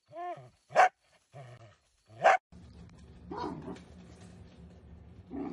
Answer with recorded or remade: recorded